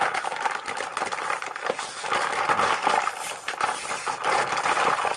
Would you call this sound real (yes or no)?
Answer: yes